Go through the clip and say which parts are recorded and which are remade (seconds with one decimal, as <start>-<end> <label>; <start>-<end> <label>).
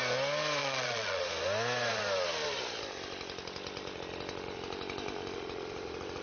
0.0-0.6 recorded; 0.6-1.2 remade; 1.2-6.2 recorded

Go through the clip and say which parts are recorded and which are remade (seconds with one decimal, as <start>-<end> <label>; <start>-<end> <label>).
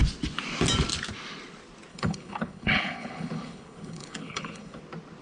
0.0-1.9 recorded; 1.9-4.8 remade; 4.8-5.2 recorded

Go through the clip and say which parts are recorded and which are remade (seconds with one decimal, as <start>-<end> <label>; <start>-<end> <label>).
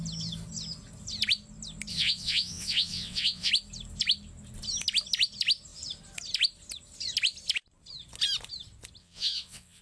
0.0-1.9 recorded; 1.9-3.5 remade; 3.5-9.0 recorded; 9.0-9.8 remade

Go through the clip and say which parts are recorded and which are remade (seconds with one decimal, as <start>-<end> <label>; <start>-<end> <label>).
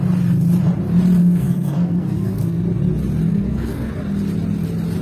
0.0-1.2 recorded; 1.2-2.6 remade; 2.6-3.3 recorded; 3.3-3.9 remade; 3.9-5.0 recorded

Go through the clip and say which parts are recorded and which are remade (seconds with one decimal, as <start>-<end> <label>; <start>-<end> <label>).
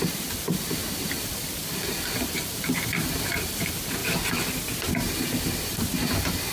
0.0-4.0 remade; 4.0-5.6 recorded; 5.6-6.5 remade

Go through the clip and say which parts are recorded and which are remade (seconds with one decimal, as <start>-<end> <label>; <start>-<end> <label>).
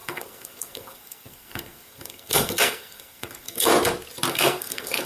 0.0-3.7 remade; 3.7-4.3 recorded; 4.3-5.1 remade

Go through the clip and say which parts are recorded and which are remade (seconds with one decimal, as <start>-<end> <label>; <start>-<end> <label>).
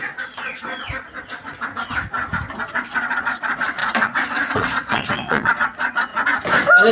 0.0-0.5 remade; 0.5-2.8 recorded; 2.8-6.1 remade; 6.1-6.9 recorded